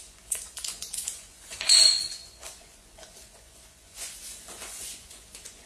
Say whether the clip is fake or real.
fake